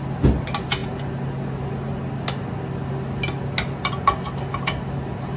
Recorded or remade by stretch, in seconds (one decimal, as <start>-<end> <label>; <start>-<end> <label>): 0.0-5.4 recorded